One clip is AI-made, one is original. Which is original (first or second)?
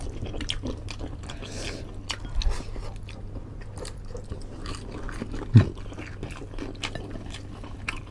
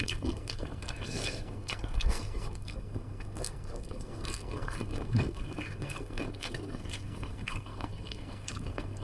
first